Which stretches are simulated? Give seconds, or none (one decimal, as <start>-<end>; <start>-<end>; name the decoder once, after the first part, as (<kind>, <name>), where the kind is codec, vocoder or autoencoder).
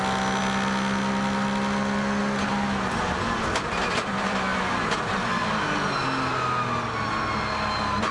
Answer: none